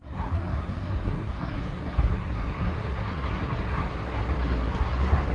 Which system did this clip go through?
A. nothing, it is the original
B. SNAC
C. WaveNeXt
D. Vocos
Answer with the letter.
B